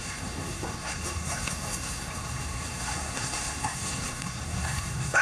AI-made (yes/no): yes